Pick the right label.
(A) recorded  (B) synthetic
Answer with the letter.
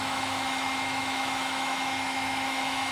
B